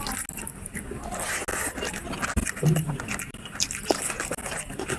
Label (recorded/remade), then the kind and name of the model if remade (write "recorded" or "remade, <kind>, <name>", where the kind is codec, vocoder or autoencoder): recorded